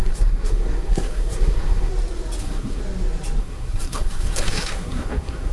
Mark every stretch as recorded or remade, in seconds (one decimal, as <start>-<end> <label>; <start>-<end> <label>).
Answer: 0.0-1.9 remade; 1.9-2.4 recorded; 2.4-2.8 remade; 2.8-3.4 recorded; 3.4-5.5 remade